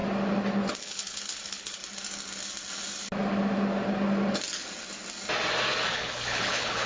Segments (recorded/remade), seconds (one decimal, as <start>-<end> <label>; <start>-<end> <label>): 0.0-0.8 recorded; 0.8-1.8 remade; 1.8-5.9 recorded; 5.9-6.9 remade

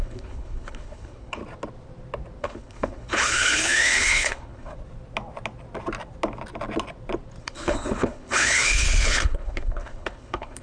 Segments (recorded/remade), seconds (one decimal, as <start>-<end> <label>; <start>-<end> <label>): 0.0-1.4 remade; 1.4-2.4 recorded; 2.4-4.7 remade; 4.7-7.4 recorded; 7.4-10.6 remade

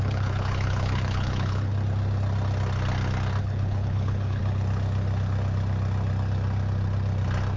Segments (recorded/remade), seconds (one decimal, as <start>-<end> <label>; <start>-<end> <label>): 0.0-1.7 remade; 1.7-3.4 recorded; 3.4-4.4 remade; 4.4-7.6 recorded

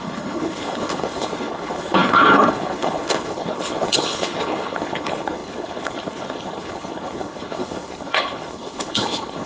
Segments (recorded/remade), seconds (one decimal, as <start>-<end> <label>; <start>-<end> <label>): 0.0-9.5 remade

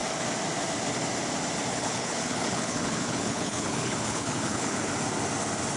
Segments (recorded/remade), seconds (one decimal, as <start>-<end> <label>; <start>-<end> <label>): 0.0-1.7 recorded; 1.7-4.9 remade; 4.9-5.8 recorded

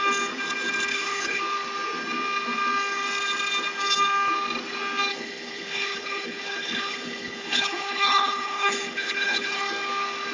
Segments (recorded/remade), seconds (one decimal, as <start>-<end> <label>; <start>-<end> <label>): 0.0-0.9 recorded; 0.9-1.4 remade; 1.4-5.1 recorded; 5.1-9.6 remade; 9.6-10.3 recorded

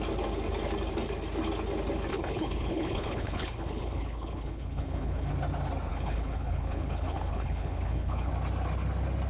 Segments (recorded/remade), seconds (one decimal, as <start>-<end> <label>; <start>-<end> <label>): 0.0-2.1 recorded; 2.1-5.3 remade; 5.3-5.9 recorded; 5.9-8.3 remade; 8.3-9.3 recorded